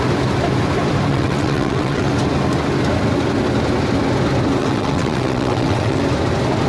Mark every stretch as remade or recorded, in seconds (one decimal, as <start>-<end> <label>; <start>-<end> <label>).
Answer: 0.0-1.1 recorded; 1.1-2.1 remade; 2.1-4.6 recorded; 4.6-6.0 remade; 6.0-6.7 recorded